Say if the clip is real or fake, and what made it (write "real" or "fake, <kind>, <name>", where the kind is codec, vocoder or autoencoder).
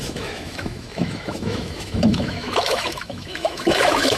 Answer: fake, autoencoder, DAC-VAE